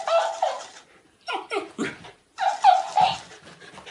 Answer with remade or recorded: recorded